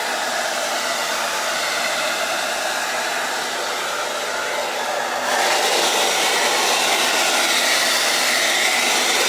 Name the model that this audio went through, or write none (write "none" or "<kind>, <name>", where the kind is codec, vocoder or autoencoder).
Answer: none